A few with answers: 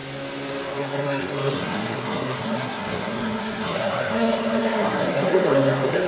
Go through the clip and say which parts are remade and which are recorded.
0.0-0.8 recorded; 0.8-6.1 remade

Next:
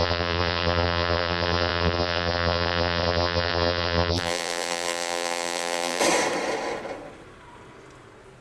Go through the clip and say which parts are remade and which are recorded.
0.0-6.0 remade; 6.0-8.4 recorded